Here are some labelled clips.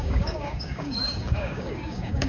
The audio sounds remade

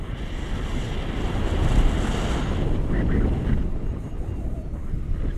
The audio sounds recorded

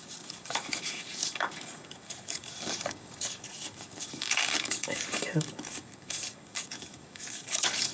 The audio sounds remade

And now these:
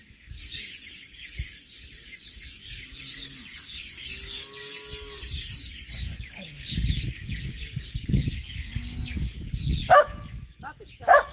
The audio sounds remade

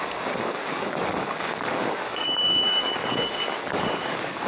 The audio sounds remade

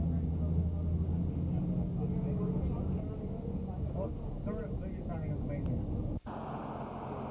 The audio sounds recorded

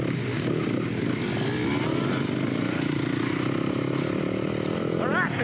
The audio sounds recorded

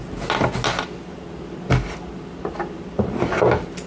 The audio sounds recorded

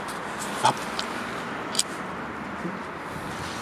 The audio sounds recorded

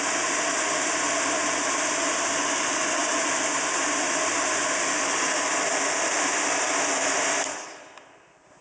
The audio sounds recorded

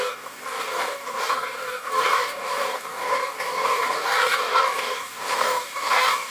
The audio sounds remade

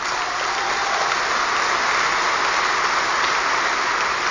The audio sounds recorded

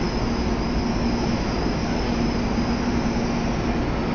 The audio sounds recorded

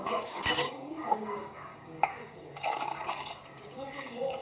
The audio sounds remade